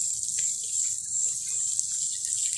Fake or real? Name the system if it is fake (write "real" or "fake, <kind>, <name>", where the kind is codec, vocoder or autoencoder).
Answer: real